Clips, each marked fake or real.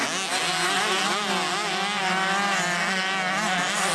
real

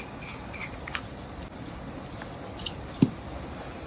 real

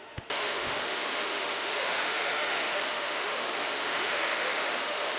fake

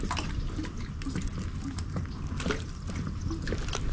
real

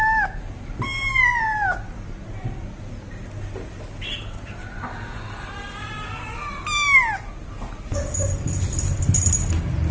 real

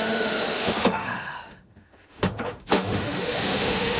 fake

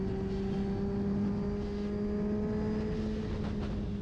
real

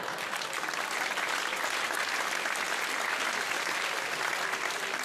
real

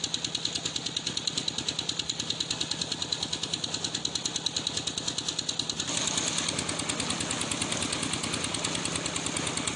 real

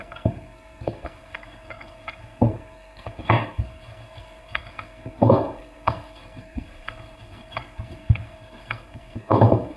fake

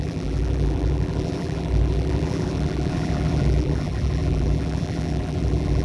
fake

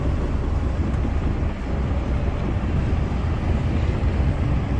real